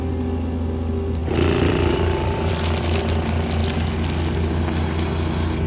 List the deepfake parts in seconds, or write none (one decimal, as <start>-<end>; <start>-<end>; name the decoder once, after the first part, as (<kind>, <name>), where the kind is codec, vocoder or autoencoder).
1.2-2.5 (vocoder, BigVGAN v2)